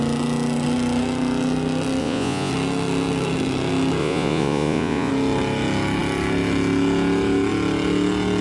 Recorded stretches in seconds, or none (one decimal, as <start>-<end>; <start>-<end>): 0.0-2.0; 2.5-4.0; 5.1-8.4